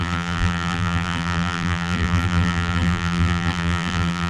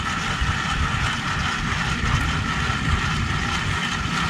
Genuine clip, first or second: second